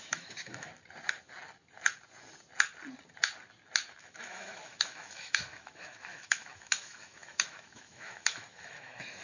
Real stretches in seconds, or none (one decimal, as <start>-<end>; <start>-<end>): 0.7-4.0